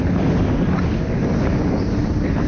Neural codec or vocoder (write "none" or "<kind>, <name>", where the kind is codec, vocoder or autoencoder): none